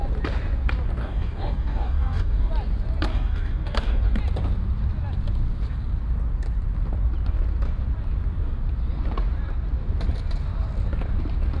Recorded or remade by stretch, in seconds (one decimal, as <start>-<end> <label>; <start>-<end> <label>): 0.0-1.0 recorded; 1.0-2.5 remade; 2.5-3.1 recorded; 3.1-4.2 remade; 4.2-11.6 recorded